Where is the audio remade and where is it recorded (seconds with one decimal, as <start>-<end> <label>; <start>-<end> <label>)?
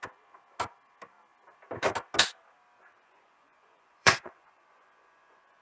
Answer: 0.0-2.9 recorded; 2.9-5.6 remade